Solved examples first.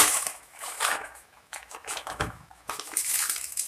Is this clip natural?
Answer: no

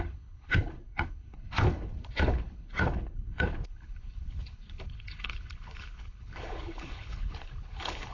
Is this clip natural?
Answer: no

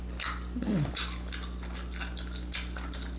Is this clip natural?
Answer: yes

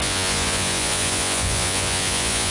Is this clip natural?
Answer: no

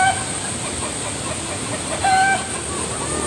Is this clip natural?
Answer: yes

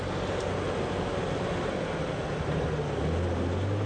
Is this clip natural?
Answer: yes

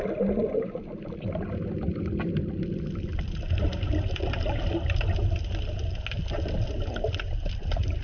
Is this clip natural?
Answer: yes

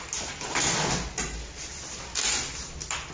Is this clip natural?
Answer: yes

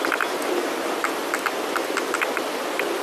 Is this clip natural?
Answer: yes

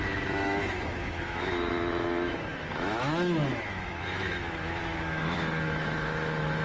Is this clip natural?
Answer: no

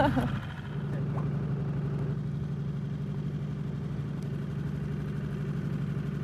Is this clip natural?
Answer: yes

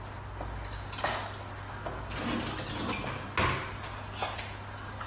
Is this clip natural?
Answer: yes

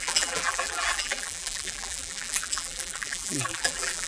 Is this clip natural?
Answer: no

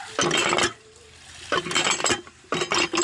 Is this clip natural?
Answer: yes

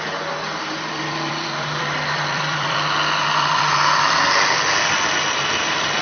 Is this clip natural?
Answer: no